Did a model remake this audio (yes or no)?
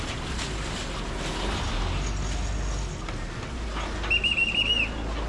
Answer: no